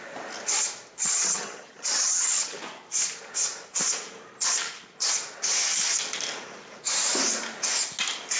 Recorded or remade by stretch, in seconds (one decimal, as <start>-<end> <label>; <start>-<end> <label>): 0.0-1.0 recorded; 1.0-2.6 remade; 2.6-8.4 recorded